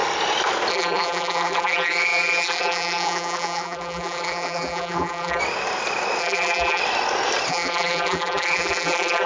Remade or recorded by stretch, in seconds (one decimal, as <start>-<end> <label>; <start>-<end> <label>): 0.0-0.7 recorded; 0.7-5.4 remade; 5.4-6.2 recorded; 6.2-6.8 remade; 6.8-7.5 recorded; 7.5-9.3 remade